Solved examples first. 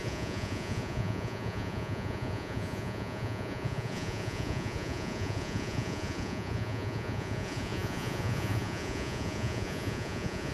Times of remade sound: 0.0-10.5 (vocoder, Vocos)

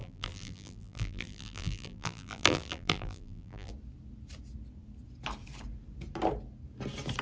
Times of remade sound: 0.0-3.7 (vocoder, BigVGAN v2)

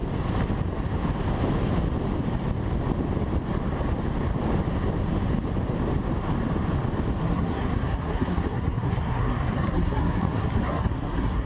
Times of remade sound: 7.2-11.5 (codec, SNAC)

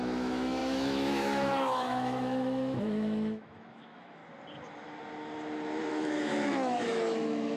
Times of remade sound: 0.0-4.2 (autoencoder, DAC-VAE); 5.9-7.6